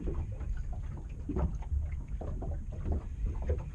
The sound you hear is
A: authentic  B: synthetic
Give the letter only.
A